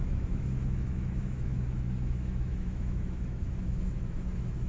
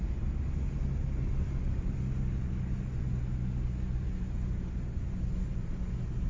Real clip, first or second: second